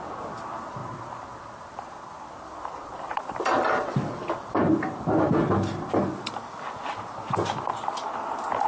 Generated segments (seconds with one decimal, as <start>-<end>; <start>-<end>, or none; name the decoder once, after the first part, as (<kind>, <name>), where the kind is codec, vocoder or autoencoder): 0.8-5.9 (vocoder, BigVGAN v2)